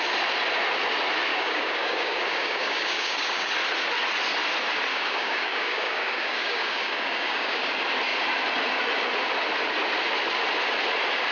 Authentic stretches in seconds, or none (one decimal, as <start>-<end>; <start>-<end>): 0.0-1.3; 3.5-4.9; 7.7-11.3